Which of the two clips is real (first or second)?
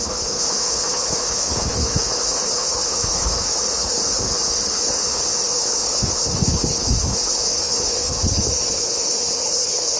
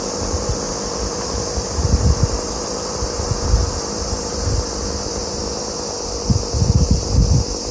second